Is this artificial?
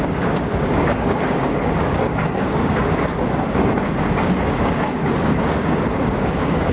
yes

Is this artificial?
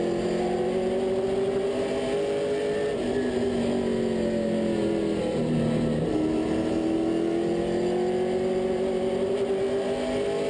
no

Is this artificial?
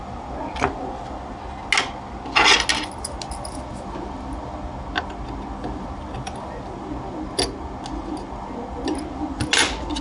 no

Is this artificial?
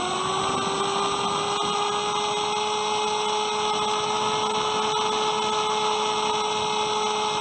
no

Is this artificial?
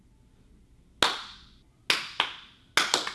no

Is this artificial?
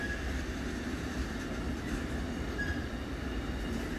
no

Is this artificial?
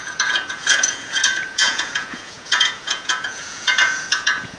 yes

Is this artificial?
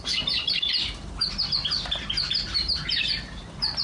yes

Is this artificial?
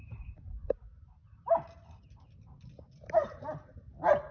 no